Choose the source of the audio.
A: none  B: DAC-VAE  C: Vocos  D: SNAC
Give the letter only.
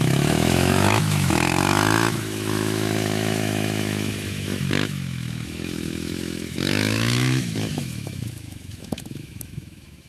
B